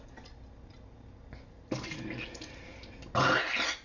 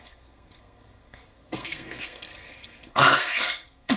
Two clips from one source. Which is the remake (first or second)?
second